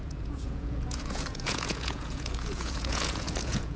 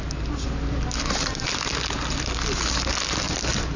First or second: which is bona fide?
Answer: second